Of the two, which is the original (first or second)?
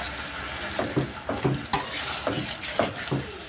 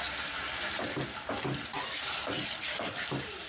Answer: first